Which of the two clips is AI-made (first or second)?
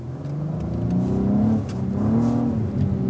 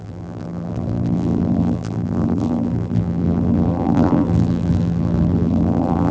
second